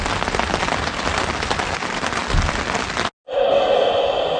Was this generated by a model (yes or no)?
no